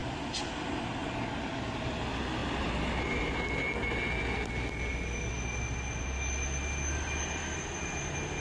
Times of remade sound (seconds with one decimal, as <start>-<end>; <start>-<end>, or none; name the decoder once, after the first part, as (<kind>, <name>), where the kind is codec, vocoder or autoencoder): none